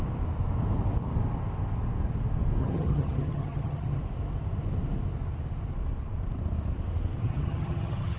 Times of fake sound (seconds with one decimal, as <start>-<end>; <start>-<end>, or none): 2.6-4.0; 7.2-8.2